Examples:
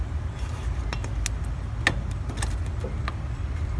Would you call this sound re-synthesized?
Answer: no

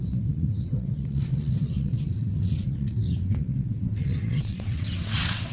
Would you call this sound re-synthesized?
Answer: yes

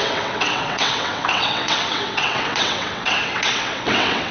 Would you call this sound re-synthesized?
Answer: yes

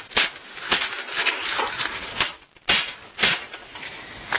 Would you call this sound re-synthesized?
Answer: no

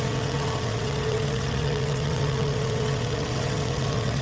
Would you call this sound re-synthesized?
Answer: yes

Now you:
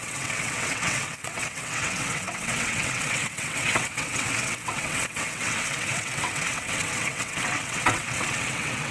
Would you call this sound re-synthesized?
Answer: yes